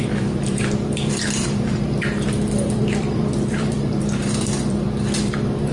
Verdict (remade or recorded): remade